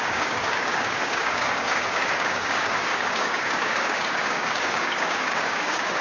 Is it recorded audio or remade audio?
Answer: remade